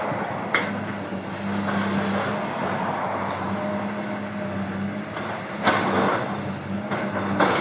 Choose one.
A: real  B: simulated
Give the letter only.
A